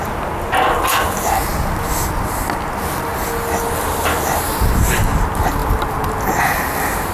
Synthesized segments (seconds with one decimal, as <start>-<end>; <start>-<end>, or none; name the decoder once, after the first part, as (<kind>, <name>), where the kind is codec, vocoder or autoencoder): none